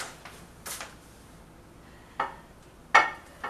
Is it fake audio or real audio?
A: real